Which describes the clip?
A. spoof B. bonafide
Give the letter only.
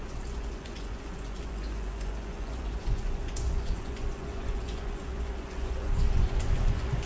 A